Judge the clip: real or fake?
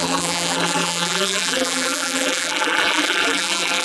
fake